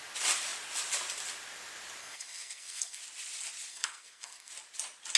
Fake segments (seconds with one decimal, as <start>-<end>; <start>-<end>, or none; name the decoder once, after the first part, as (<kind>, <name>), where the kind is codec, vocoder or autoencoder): 2.0-3.0 (codec, SNAC); 3.7-4.5